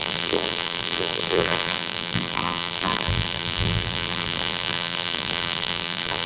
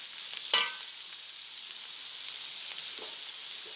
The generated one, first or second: first